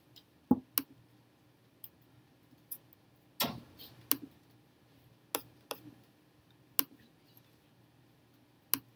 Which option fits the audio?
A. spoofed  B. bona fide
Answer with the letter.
B